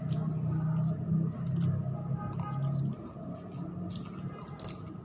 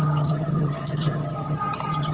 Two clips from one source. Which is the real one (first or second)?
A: first